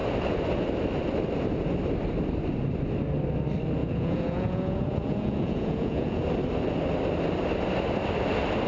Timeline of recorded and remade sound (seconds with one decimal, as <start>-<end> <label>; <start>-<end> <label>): 0.0-3.8 recorded; 3.8-6.2 remade; 6.2-8.7 recorded